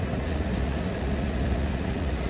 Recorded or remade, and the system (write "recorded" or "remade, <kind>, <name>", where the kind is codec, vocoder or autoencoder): remade, vocoder, Vocos